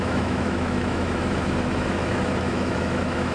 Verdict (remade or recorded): remade